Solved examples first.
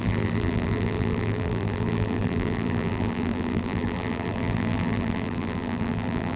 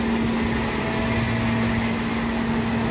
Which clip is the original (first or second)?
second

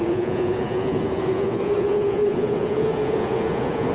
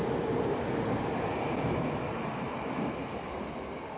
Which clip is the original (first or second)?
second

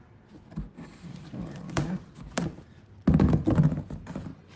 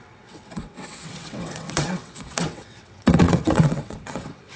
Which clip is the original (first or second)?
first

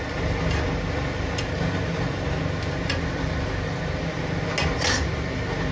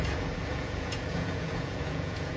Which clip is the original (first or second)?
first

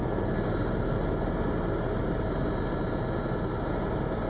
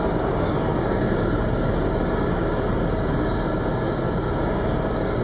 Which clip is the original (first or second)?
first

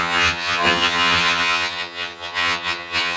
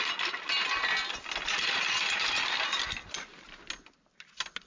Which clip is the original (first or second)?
second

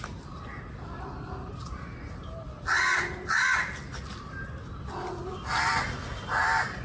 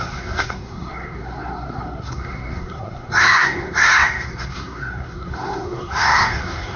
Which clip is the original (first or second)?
first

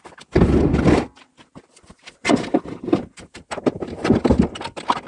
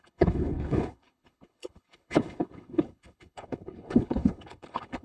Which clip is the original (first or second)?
first